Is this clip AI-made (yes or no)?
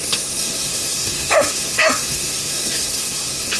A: yes